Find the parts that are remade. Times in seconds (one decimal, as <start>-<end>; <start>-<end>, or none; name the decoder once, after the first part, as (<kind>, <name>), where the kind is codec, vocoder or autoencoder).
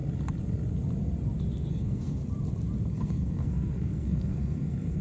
1.7-2.2 (codec, SNAC); 2.9-5.0